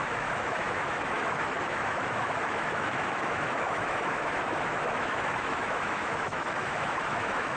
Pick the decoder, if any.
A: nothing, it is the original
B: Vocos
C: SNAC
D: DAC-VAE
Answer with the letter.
D